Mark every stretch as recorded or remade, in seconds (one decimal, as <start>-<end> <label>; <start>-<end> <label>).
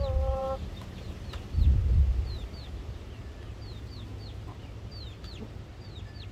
0.0-0.4 recorded; 0.4-1.1 remade; 1.1-6.3 recorded